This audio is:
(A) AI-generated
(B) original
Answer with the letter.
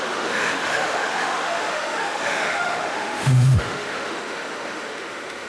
A